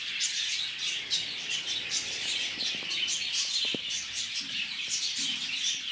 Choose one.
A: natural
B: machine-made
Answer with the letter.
A